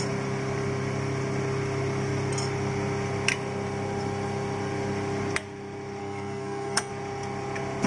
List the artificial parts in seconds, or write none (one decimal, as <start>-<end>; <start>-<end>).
6.0-6.9